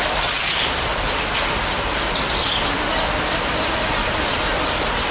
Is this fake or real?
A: real